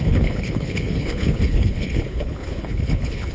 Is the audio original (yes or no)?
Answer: no